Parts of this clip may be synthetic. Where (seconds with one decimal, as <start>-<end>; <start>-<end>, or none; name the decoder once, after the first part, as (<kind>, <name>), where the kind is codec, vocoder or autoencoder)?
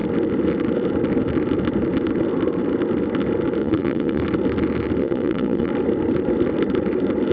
3.6-4.2 (vocoder, Vocos); 5.0-5.7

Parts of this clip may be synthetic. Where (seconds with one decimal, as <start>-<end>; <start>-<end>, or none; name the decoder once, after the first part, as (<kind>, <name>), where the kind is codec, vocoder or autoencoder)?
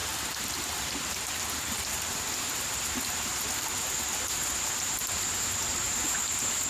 0.0-2.9 (vocoder, BigVGAN v2); 3.3-4.2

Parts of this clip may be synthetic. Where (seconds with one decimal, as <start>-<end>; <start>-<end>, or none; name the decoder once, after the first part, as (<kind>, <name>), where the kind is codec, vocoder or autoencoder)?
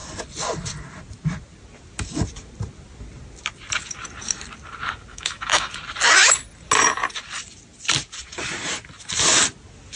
5.1-5.7 (autoencoder, DAC-VAE)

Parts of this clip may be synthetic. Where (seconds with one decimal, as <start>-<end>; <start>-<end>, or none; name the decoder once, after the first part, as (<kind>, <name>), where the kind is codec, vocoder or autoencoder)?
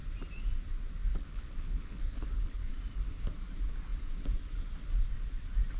1.1-2.7 (codec, HILCodec)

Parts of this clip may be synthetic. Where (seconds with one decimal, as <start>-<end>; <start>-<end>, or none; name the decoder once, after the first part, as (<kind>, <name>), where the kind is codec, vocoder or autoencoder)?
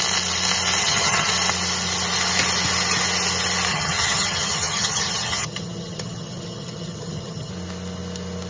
0.8-1.3 (vocoder, HiFi-GAN); 3.7-7.5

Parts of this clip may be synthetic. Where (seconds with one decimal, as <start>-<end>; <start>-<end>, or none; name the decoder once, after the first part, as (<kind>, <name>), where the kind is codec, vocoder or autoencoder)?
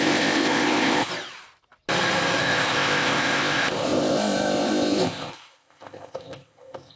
0.0-1.1 (codec, ZipCodec); 2.4-7.0